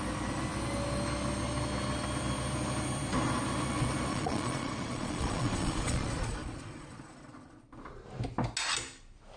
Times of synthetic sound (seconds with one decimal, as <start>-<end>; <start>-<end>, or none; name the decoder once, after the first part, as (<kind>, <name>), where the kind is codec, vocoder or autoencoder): 4.1-7.6 (vocoder, Vocos)